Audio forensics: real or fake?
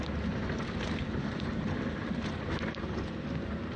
real